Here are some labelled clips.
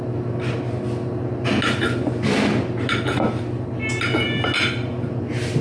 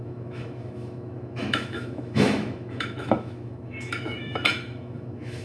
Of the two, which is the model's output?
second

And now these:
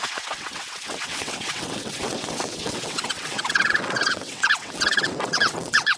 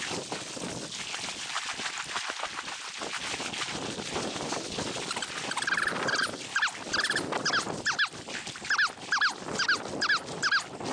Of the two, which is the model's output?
first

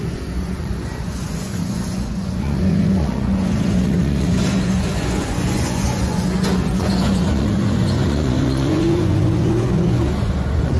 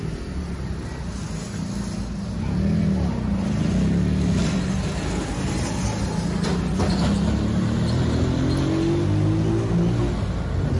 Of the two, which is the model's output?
first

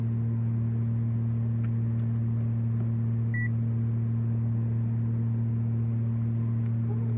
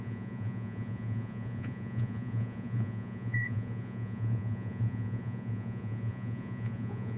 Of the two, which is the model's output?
second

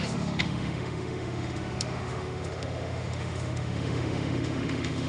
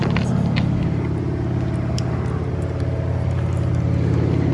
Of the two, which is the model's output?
first